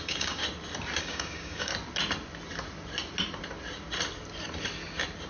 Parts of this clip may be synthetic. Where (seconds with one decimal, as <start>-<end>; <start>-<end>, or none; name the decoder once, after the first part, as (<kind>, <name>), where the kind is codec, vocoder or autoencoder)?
0.0-0.4 (codec, DAC); 1.0-1.7